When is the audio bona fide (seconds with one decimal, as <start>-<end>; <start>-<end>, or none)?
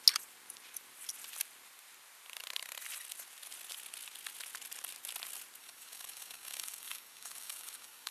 0.0-5.6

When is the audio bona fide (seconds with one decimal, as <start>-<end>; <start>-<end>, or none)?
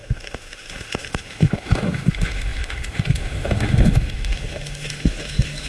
none